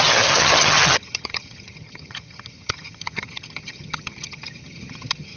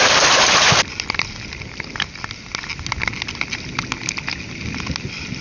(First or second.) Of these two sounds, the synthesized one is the first